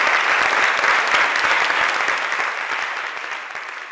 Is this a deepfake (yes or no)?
no